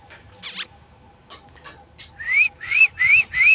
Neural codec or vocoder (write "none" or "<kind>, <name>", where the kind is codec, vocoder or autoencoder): none